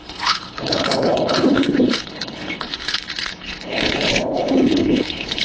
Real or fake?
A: fake